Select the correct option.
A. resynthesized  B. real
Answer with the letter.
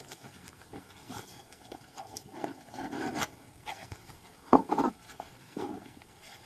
A